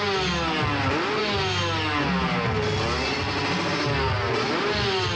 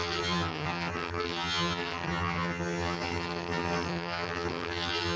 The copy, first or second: second